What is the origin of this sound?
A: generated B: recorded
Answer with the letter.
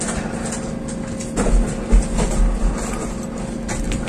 B